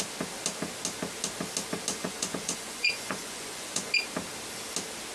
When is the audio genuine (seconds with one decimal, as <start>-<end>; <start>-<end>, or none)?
0.0-1.9; 3.9-5.1